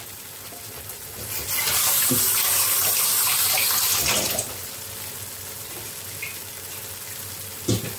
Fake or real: real